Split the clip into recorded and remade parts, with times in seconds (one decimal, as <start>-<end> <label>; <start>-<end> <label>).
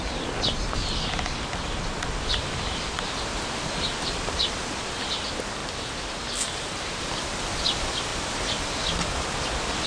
0.0-8.1 recorded; 8.1-8.7 remade; 8.7-9.9 recorded